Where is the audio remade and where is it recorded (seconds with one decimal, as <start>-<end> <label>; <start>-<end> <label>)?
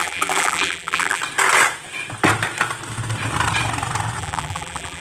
0.0-1.2 remade; 1.2-4.2 recorded; 4.2-5.0 remade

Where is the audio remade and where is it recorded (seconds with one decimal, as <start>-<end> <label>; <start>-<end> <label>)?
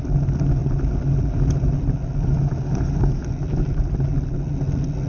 0.0-5.1 recorded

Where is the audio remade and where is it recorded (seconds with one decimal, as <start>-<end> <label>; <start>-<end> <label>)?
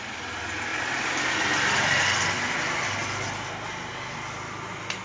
0.0-0.7 recorded; 0.7-1.3 remade; 1.3-5.0 recorded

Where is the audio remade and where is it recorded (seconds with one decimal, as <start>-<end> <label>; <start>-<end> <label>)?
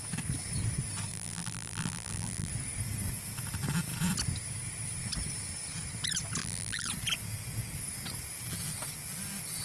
0.0-1.1 recorded; 1.1-2.5 remade; 2.5-6.4 recorded; 6.4-6.9 remade; 6.9-9.6 recorded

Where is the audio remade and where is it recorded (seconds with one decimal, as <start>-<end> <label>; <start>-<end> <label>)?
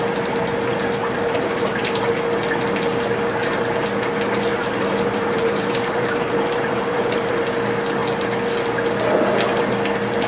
0.0-1.0 recorded; 1.0-2.0 remade; 2.0-4.5 recorded; 4.5-7.3 remade; 7.3-10.3 recorded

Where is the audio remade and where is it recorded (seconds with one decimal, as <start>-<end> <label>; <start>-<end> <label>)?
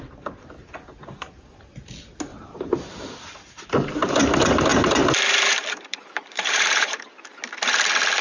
0.0-2.3 recorded; 2.3-4.2 remade; 4.2-4.7 recorded; 4.7-7.3 remade; 7.3-8.2 recorded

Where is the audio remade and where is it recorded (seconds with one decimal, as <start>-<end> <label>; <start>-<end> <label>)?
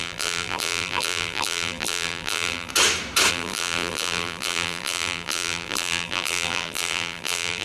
0.0-2.7 remade; 2.7-3.3 recorded; 3.3-7.6 remade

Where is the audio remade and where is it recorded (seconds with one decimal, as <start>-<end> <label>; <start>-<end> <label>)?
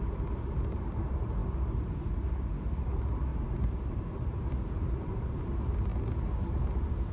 0.0-3.3 recorded; 3.3-5.4 remade; 5.4-7.1 recorded